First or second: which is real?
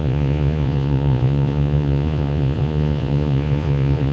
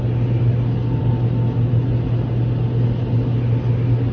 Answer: second